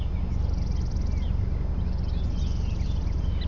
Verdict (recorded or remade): recorded